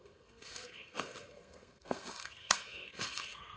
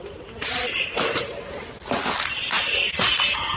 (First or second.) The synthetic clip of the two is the first